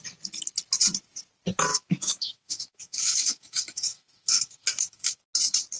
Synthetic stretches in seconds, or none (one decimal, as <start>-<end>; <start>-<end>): 1.7-5.2